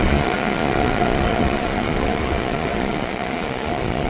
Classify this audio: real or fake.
fake